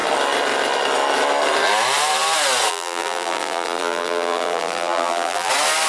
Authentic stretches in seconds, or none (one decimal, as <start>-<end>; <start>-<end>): 0.0-2.7; 5.5-5.9